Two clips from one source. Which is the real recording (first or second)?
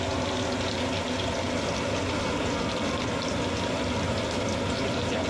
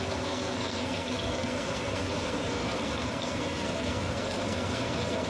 first